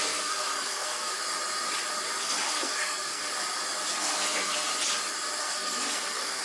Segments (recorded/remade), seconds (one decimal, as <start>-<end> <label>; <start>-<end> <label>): 0.0-1.2 remade; 1.2-2.2 recorded; 2.2-3.3 remade; 3.3-3.9 recorded; 3.9-4.7 remade; 4.7-5.4 recorded; 5.4-6.4 remade